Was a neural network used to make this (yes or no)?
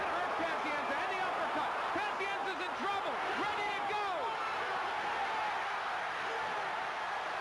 no